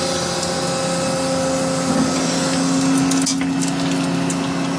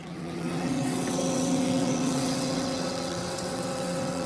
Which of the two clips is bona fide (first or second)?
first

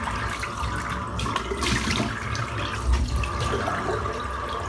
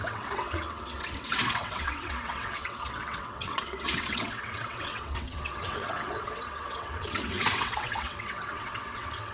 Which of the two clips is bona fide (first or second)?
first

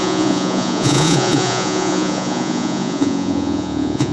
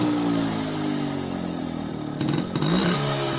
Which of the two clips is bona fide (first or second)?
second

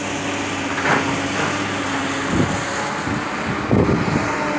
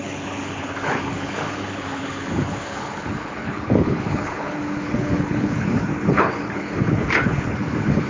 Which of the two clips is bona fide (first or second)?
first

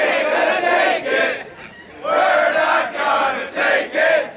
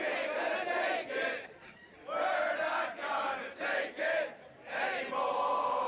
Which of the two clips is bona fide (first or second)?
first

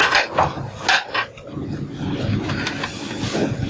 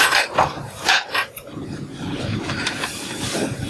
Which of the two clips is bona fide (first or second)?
first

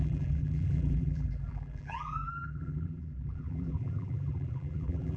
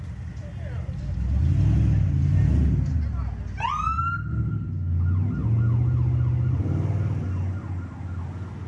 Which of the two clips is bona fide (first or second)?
second